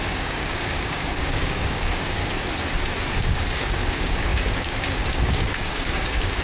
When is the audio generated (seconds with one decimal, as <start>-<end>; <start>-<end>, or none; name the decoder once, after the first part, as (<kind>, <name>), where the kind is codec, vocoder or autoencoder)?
0.0-2.2 (codec, DAC); 3.0-6.4